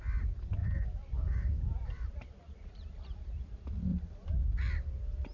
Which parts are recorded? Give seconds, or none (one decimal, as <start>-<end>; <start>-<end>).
0.0-0.6; 3.4-3.9; 4.7-5.3